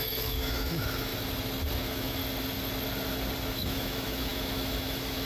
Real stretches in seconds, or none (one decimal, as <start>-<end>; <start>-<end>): 1.1-1.8; 2.2-3.5